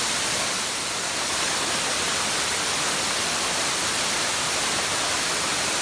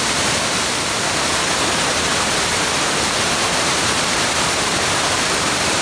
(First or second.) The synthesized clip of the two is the second